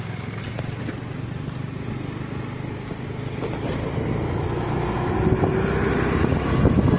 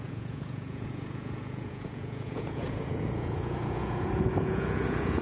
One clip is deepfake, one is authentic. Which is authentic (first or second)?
first